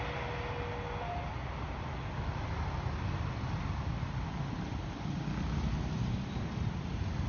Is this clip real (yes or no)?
yes